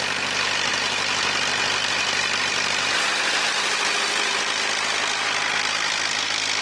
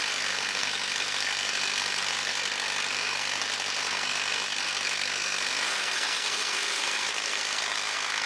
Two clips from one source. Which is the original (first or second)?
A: first